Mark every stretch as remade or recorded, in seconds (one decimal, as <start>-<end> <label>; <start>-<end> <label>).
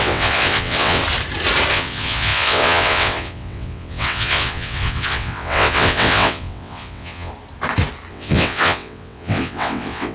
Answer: 0.0-1.0 remade; 1.0-1.7 recorded; 1.7-7.3 remade; 7.3-8.1 recorded; 8.1-10.1 remade